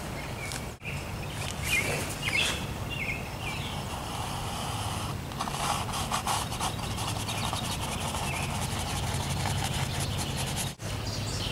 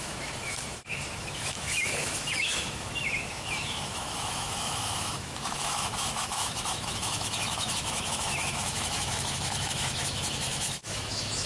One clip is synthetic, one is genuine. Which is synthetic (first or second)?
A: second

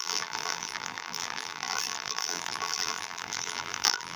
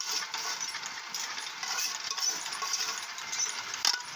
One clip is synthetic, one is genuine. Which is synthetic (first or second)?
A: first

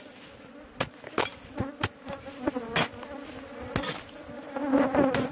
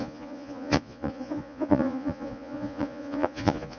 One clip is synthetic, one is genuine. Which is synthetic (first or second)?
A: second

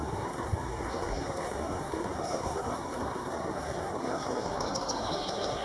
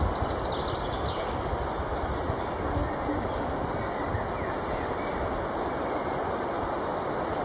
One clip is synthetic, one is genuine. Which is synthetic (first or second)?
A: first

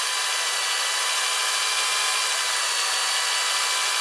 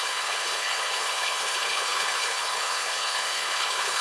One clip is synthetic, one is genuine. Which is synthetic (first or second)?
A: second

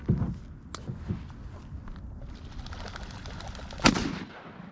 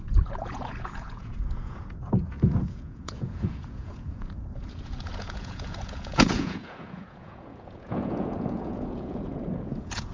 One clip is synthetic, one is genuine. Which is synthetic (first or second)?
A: second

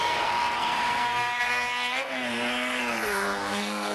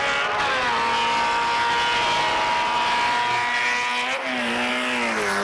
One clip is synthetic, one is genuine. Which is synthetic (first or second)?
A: first